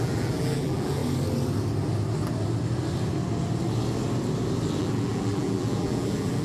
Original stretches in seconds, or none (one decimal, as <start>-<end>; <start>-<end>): 1.0-4.8